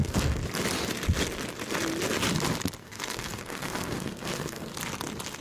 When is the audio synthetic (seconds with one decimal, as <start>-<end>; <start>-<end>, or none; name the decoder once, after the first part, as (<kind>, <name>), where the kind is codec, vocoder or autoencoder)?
0.0-0.4 (codec, SNAC); 2.8-4.7